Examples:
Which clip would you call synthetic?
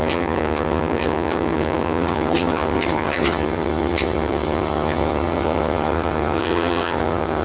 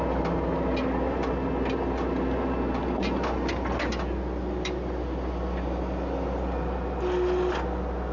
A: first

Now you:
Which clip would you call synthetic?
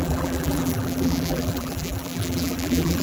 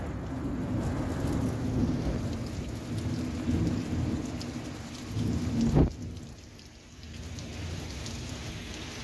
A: first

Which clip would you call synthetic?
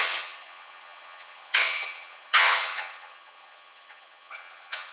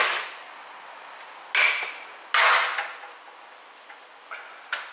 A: first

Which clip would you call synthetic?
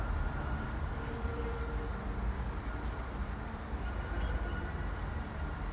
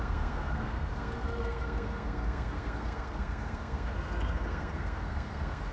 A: second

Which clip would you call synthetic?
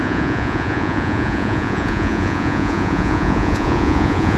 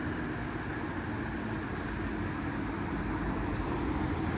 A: first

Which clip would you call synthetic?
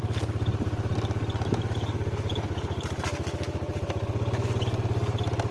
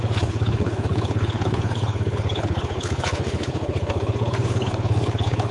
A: second